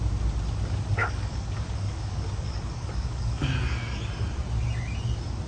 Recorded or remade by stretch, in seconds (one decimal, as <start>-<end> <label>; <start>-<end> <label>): 0.0-1.0 recorded; 1.0-4.0 remade; 4.0-5.5 recorded